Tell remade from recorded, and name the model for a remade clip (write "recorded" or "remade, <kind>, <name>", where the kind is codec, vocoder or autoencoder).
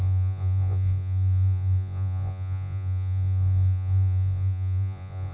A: remade, vocoder, Vocos